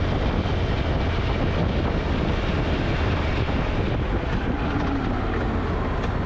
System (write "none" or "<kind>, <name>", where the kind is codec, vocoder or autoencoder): none